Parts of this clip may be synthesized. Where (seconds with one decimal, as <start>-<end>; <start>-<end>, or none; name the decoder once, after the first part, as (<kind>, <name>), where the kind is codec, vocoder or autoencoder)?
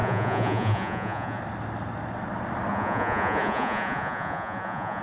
0.0-1.4 (vocoder, Vocos); 2.7-5.0